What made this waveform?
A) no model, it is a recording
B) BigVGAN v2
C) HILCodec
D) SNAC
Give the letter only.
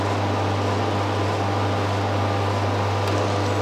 A